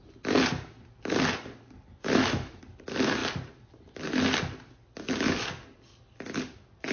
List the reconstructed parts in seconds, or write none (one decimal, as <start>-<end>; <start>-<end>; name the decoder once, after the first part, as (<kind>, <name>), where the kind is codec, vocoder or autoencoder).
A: 2.0-2.6 (autoencoder, DAC-VAE)